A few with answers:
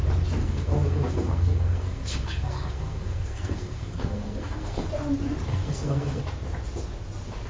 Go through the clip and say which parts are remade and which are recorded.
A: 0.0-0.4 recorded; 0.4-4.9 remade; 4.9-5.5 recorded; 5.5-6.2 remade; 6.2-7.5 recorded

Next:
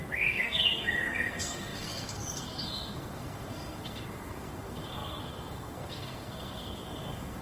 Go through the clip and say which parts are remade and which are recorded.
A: 0.0-7.4 remade

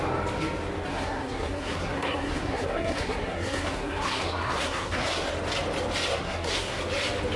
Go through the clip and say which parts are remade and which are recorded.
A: 0.0-0.9 recorded; 0.9-5.3 remade; 5.3-6.1 recorded; 6.1-6.8 remade; 6.8-7.4 recorded

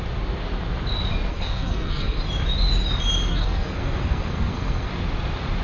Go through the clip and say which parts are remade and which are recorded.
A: 0.0-1.3 recorded; 1.3-2.2 remade; 2.2-3.3 recorded; 3.3-4.9 remade; 4.9-5.6 recorded